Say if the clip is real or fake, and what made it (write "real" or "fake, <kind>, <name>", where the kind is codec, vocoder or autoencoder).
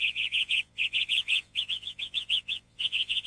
fake, vocoder, Vocos